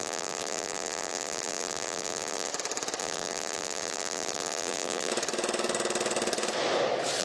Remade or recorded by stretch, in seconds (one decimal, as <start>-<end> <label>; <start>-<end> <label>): 0.0-2.5 remade; 2.5-3.0 recorded; 3.0-5.1 remade; 5.1-7.2 recorded